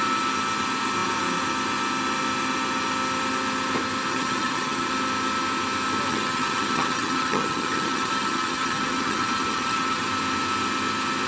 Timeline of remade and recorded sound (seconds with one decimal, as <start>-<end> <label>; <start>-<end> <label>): 0.0-4.1 recorded; 4.1-4.9 remade; 4.9-6.1 recorded; 6.1-10.1 remade; 10.1-11.3 recorded